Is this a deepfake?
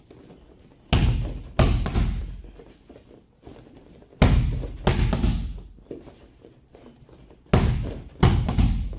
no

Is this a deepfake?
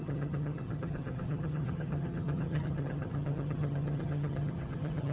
yes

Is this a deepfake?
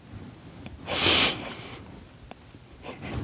no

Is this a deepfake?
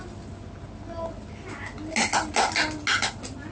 no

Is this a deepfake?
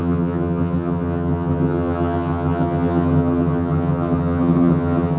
yes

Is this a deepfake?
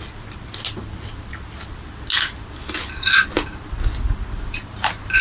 no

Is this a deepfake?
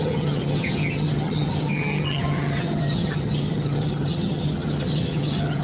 yes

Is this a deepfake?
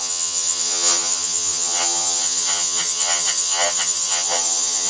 yes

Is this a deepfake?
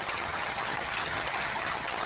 yes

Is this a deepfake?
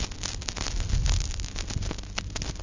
no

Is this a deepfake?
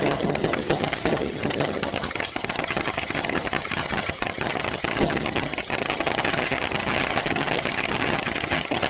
yes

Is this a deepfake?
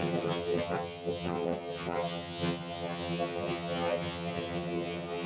yes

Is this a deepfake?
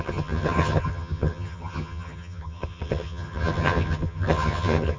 yes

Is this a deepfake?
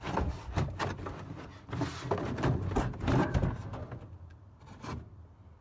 no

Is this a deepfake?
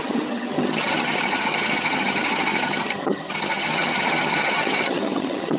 yes